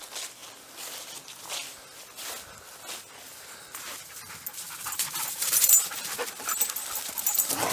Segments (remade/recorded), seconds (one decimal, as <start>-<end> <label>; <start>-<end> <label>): 0.0-7.7 recorded